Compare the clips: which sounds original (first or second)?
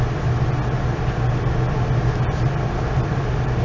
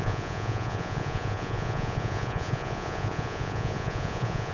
first